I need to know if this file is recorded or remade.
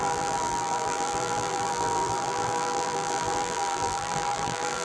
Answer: remade